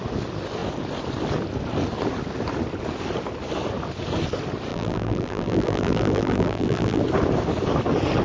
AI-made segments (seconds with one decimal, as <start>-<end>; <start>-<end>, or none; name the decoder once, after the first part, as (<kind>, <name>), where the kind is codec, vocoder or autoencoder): 4.7-7.0 (vocoder, BigVGAN v2)